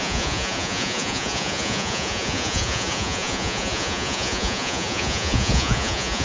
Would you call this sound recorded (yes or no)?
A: no